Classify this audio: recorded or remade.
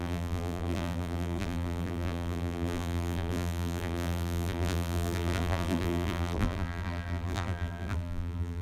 remade